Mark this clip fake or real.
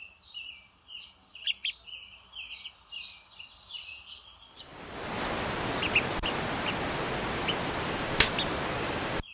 real